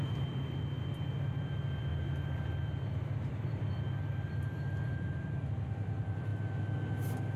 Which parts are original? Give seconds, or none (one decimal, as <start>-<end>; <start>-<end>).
6.3-7.4